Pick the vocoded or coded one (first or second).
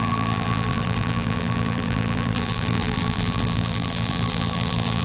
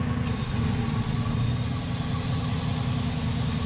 first